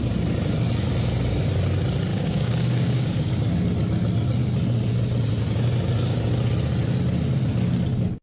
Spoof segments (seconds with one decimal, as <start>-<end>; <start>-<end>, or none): 2.1-3.3